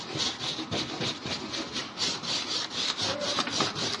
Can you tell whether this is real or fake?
real